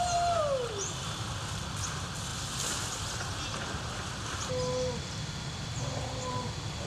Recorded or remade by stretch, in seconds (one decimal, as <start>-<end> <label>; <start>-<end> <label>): 0.0-6.9 recorded